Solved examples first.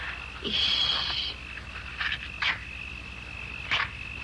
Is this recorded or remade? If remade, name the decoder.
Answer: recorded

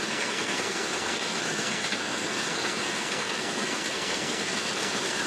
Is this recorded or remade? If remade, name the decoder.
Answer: remade, codec, SNAC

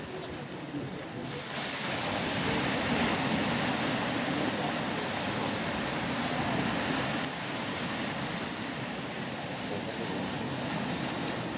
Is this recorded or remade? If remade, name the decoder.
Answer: recorded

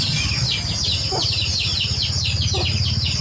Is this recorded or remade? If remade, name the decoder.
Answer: recorded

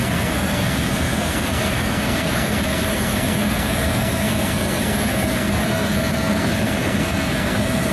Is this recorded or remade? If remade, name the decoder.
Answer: remade, codec, SNAC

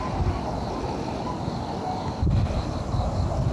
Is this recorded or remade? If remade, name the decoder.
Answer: recorded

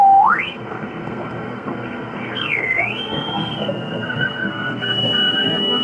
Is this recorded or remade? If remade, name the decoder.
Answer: remade, codec, SNAC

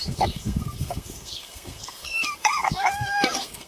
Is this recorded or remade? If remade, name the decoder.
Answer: remade, codec, SNAC